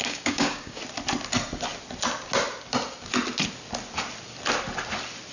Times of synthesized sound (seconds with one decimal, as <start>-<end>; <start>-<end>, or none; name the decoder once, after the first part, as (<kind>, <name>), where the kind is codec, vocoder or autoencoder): 0.0-0.8 (codec, DAC)